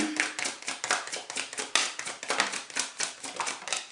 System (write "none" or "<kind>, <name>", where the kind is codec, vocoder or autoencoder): none